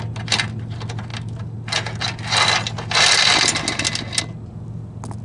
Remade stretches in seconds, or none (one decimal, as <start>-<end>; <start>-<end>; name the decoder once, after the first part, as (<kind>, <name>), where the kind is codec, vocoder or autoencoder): none